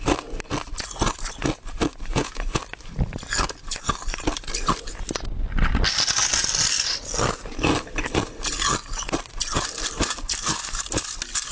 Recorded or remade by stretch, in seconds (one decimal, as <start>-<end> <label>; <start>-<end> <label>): 0.0-2.1 recorded; 2.1-2.6 remade; 2.6-11.5 recorded